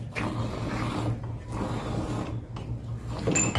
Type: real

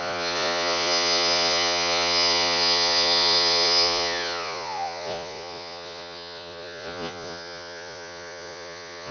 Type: fake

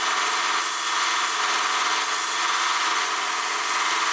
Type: real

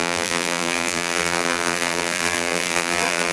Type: fake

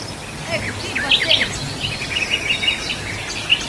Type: real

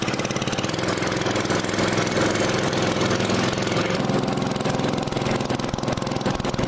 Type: real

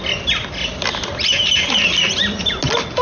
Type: real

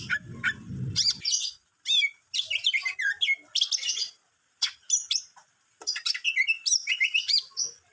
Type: real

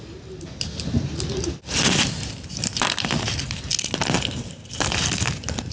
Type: real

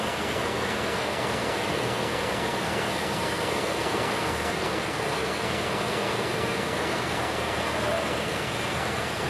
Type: fake